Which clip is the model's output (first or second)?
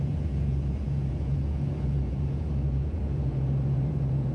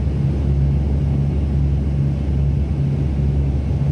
first